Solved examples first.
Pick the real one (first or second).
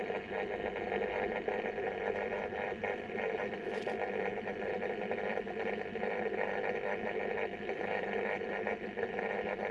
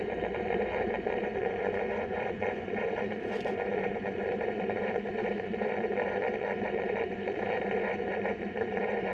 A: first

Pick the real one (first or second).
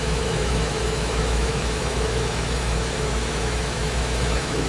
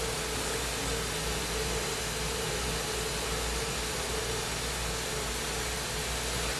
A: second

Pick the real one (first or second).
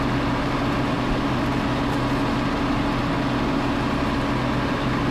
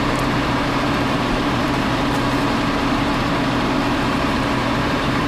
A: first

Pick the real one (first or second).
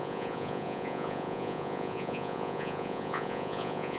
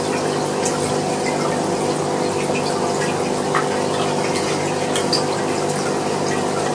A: second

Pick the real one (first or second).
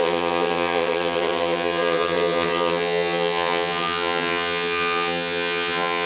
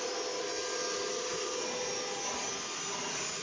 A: second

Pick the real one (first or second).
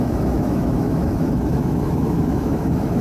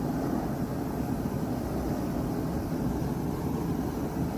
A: second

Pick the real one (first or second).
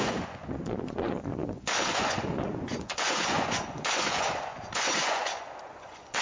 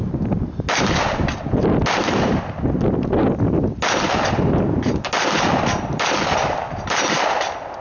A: second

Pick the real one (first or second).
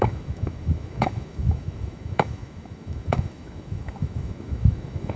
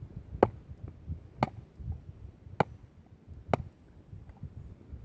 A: second